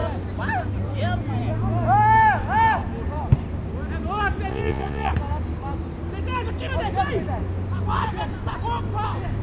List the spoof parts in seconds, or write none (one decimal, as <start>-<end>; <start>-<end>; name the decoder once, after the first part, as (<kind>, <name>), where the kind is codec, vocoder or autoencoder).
4.5-5.1 (vocoder, Vocos)